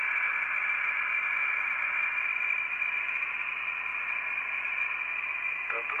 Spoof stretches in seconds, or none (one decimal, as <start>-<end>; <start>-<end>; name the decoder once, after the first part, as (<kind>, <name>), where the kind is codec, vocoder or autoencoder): 2.3-3.0 (vocoder, BigVGAN v2); 3.9-4.8